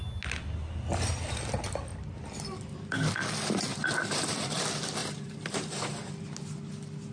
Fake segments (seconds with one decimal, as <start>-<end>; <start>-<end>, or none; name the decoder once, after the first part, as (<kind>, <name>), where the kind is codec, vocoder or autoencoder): 3.7-4.6 (vocoder, BigVGAN v2); 5.0-6.2

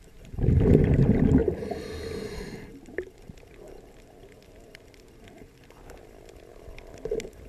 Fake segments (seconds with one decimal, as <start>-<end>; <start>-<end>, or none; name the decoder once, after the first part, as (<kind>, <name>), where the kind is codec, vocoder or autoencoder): none

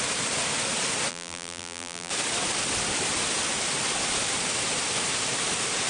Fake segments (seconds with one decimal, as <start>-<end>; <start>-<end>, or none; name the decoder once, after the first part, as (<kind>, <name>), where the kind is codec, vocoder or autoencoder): 1.1-2.1 (vocoder, BigVGAN v2)

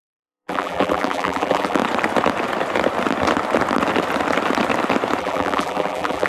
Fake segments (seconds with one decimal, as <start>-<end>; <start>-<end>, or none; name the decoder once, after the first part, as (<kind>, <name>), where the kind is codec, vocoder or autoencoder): 0.0-1.8 (vocoder, BigVGAN v2); 5.2-6.3

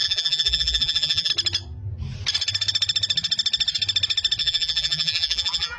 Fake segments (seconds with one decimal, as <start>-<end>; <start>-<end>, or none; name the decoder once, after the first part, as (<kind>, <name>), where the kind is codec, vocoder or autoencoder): 0.0-1.3 (vocoder, BigVGAN v2); 4.4-5.8